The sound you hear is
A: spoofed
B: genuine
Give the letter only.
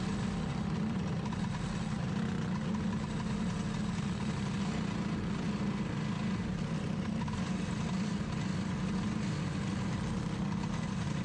B